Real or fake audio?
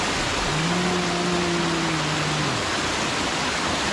real